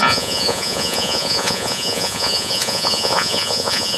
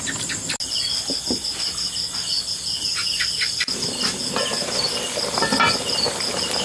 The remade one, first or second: first